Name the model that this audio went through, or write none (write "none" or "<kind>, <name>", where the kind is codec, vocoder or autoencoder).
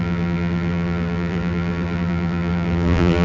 vocoder, BigVGAN v2